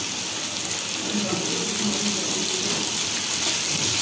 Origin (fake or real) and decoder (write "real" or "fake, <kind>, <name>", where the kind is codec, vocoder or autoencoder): real